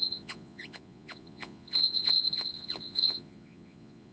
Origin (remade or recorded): remade